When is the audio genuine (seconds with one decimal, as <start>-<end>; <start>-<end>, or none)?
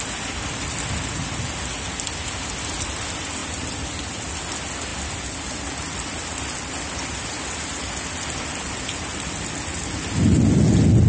0.0-11.1